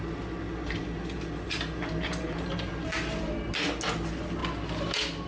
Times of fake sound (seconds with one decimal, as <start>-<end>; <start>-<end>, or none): 0.8-2.7